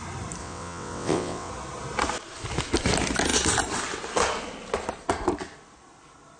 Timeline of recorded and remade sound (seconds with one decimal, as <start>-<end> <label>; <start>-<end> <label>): 0.0-0.4 recorded; 0.4-1.5 remade; 1.5-6.4 recorded